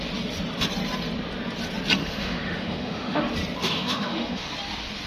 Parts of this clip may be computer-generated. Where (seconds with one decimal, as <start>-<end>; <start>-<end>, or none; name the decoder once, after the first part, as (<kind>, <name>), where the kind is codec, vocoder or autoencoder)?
2.0-3.2 (autoencoder, DAC-VAE); 3.6-4.5